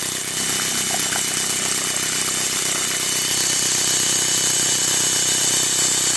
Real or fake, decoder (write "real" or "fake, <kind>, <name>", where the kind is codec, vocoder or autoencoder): real